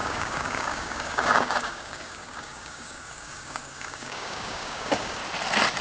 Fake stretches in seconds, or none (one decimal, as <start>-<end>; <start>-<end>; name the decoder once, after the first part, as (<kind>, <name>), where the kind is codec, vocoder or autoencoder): 0.0-5.2 (codec, DAC)